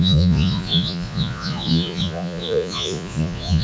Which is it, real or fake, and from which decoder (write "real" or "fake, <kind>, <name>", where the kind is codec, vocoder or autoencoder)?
fake, vocoder, Vocos